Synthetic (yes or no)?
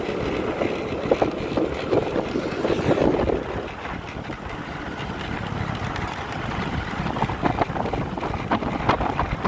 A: no